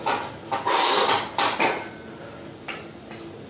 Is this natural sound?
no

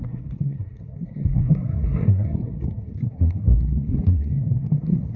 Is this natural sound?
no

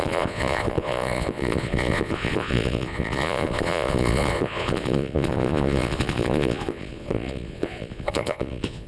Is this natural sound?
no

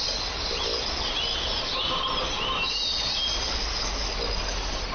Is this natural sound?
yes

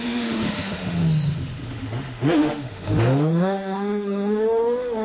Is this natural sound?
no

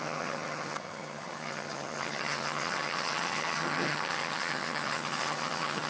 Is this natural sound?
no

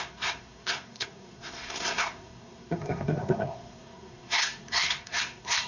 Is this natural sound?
no